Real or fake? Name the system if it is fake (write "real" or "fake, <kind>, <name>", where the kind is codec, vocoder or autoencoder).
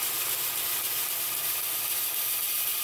real